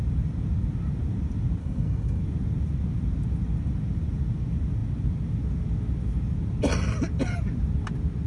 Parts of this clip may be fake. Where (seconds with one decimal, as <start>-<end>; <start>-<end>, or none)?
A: 1.6-2.2